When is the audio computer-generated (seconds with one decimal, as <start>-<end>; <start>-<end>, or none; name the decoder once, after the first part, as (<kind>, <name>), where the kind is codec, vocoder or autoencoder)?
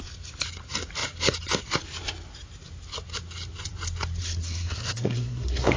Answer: 4.2-5.8 (codec, SNAC)